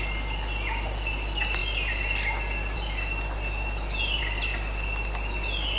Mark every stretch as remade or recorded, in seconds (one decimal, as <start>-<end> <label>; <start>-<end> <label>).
0.0-5.8 recorded